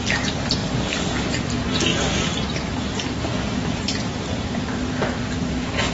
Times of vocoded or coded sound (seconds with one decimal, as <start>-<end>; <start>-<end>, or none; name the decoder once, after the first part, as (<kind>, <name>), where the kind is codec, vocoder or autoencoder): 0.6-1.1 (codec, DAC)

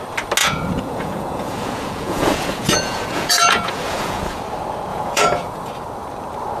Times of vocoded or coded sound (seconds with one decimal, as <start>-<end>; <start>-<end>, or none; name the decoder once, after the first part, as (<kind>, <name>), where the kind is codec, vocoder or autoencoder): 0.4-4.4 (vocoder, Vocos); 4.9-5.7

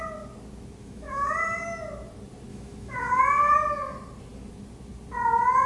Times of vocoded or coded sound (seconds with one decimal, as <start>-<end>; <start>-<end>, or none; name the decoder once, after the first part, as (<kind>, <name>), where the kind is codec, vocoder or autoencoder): 0.8-1.3 (autoencoder, DAC-VAE); 2.5-3.2

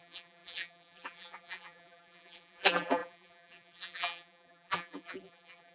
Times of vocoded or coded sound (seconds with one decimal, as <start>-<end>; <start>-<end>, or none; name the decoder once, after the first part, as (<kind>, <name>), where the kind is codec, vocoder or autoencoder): 0.0-5.7 (vocoder, BigVGAN v2)

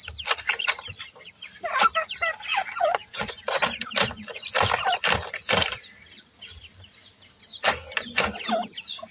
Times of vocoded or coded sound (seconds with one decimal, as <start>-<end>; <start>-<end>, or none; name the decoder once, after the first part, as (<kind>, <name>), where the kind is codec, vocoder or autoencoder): 2.5-3.3 (vocoder, WaveNeXt)